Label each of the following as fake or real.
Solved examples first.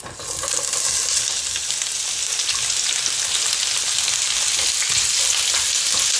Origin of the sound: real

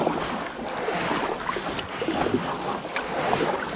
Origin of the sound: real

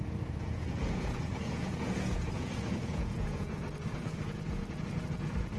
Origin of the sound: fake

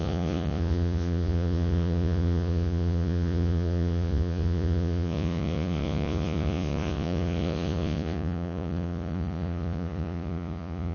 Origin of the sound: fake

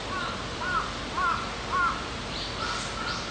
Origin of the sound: real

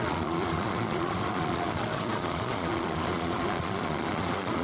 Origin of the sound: fake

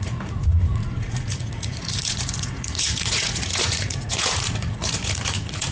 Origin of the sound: fake